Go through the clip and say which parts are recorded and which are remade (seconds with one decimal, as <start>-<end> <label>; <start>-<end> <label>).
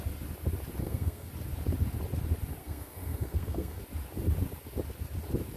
0.0-0.8 recorded; 0.8-1.3 remade; 1.3-2.6 recorded; 2.6-3.8 remade; 3.8-5.6 recorded